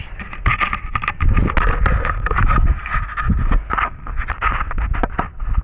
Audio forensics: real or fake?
real